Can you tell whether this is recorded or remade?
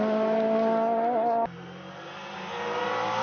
recorded